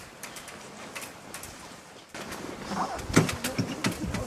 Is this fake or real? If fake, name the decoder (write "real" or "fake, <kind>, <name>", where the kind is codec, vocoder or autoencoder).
real